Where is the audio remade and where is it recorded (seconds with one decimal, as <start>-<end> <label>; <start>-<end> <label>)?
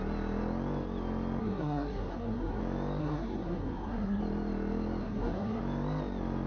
0.0-1.4 recorded; 1.4-2.6 remade; 2.6-3.0 recorded; 3.0-4.2 remade; 4.2-5.0 recorded; 5.0-5.6 remade; 5.6-6.5 recorded